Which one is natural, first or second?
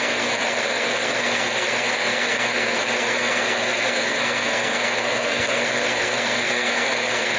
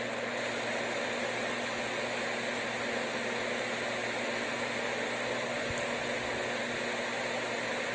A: second